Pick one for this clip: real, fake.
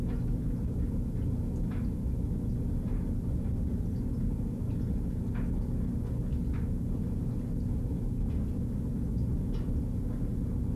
real